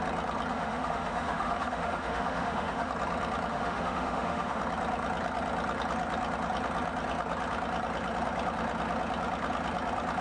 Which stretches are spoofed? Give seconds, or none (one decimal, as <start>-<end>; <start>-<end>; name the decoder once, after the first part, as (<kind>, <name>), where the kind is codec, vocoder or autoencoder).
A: 0.5-2.9 (autoencoder, DAC-VAE); 3.5-4.6